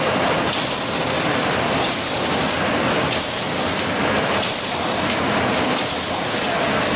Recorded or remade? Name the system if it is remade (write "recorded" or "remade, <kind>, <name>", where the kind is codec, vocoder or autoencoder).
recorded